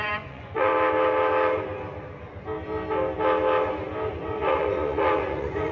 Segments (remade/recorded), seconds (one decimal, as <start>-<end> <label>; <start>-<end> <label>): 0.0-0.7 remade; 0.7-4.1 recorded; 4.1-5.7 remade